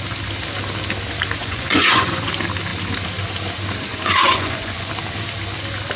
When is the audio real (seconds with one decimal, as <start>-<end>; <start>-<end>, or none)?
0.0-1.4; 2.3-3.9; 4.9-6.0